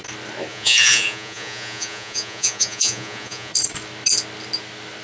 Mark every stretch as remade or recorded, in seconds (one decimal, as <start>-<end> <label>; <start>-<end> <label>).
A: 0.0-0.5 recorded; 0.5-3.5 remade; 3.5-5.0 recorded